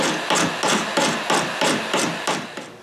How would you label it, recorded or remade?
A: recorded